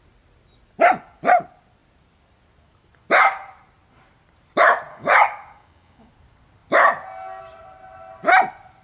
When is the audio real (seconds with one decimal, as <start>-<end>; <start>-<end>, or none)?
0.0-4.9; 6.1-8.8